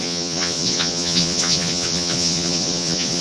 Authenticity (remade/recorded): remade